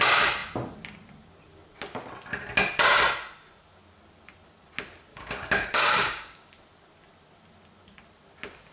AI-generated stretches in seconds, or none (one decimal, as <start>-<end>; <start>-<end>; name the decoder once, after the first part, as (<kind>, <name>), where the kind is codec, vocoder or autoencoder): 5.1-6.5 (codec, DAC)

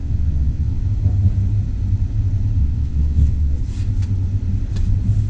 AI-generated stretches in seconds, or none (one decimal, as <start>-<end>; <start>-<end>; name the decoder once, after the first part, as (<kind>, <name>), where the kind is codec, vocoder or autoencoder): 0.0-0.8 (vocoder, WaveNeXt); 2.6-3.6

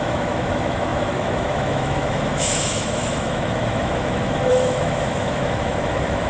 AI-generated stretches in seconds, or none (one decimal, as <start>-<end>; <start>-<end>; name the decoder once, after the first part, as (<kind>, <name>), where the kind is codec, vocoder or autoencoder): 0.0-6.3 (autoencoder, DAC-VAE)

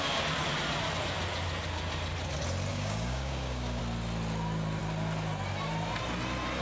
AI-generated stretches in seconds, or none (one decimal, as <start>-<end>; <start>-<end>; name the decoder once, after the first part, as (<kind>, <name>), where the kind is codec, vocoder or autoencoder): 2.7-3.8 (codec, DAC)

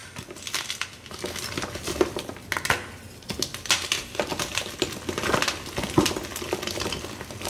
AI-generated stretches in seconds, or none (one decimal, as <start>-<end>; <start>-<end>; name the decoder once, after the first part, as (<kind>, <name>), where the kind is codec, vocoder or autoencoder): 0.0-0.9 (vocoder, BigVGAN v2)